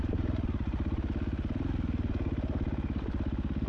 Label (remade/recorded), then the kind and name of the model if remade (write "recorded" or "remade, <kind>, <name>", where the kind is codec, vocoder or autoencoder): recorded